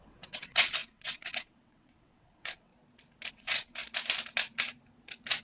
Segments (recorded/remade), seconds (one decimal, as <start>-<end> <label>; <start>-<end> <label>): 0.0-2.7 remade; 2.7-3.3 recorded; 3.3-3.8 remade; 3.8-5.4 recorded